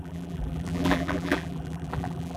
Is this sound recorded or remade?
remade